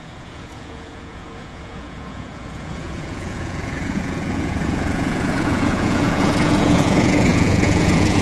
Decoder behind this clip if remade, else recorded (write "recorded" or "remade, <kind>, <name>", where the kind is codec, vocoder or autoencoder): remade, vocoder, Vocos